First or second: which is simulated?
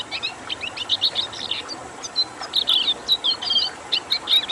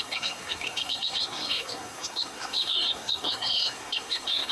second